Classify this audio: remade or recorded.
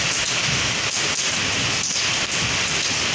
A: recorded